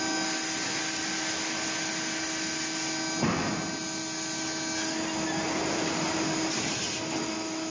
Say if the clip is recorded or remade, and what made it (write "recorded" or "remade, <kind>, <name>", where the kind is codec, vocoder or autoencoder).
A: recorded